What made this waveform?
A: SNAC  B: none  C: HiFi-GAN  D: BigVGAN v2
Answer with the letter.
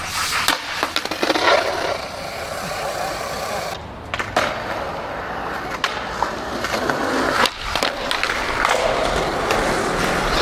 B